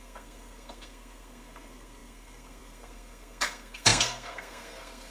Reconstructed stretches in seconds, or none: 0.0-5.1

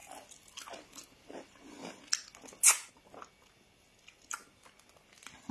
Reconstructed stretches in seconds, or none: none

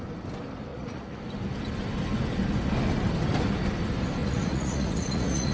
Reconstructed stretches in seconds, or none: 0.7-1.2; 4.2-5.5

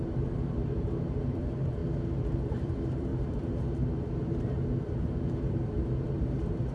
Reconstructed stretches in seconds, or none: 0.0-1.8; 2.5-6.7

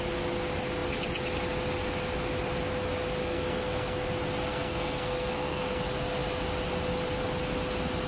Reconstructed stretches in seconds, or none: 3.2-4.1; 4.5-5.8